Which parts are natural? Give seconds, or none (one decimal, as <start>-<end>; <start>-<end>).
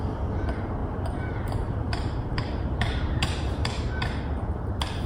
0.0-0.8; 3.9-5.1